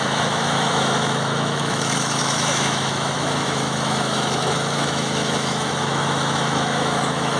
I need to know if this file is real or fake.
fake